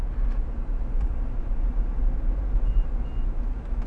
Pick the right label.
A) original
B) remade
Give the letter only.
A